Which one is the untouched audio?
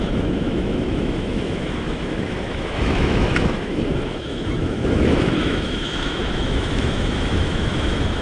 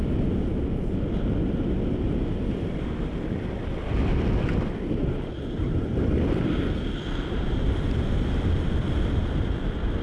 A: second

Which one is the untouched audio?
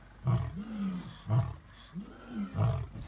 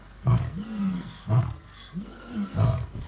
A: first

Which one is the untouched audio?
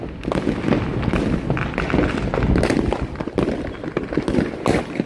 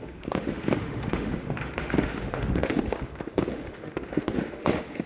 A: first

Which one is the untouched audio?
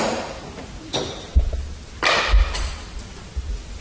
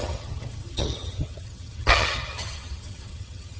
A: first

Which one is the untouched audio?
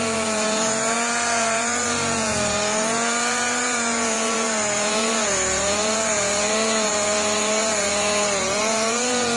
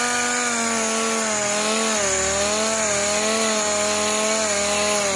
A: second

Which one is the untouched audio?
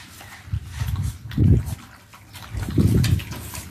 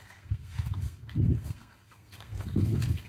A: first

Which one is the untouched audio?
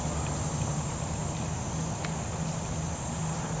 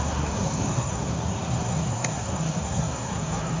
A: first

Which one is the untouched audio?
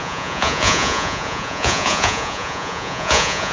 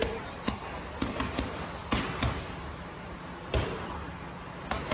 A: second